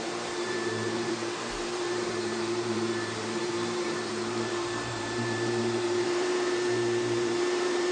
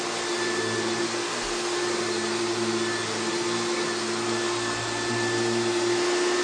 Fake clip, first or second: first